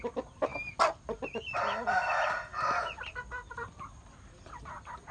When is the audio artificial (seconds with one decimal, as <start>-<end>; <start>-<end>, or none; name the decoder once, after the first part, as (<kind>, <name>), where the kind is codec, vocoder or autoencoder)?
0.0-0.5 (vocoder, BigVGAN v2); 3.6-5.1